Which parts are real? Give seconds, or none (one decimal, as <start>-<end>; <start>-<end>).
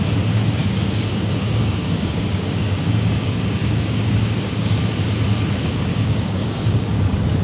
0.0-0.6; 4.8-5.9